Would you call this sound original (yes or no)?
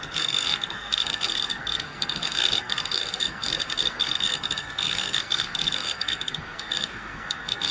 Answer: no